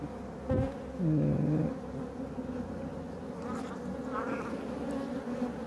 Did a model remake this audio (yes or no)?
no